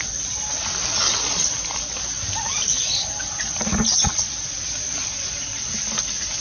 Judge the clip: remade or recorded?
recorded